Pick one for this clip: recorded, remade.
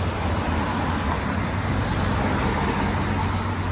recorded